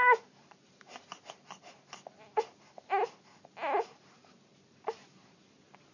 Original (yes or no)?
yes